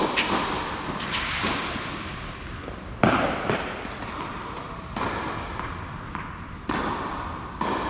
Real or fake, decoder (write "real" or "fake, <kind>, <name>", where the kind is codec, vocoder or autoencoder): real